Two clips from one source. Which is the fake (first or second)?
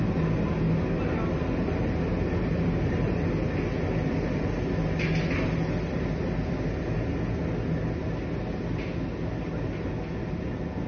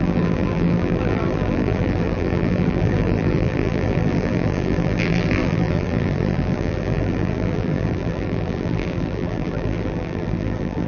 second